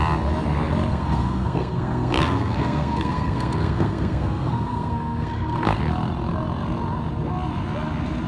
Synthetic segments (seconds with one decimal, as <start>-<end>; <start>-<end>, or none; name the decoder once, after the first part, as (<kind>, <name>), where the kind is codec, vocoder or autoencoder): 0.9-5.8 (codec, SNAC)